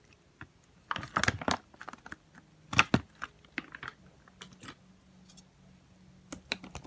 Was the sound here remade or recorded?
recorded